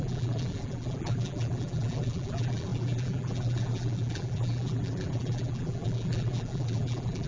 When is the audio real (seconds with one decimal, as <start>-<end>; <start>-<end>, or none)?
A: none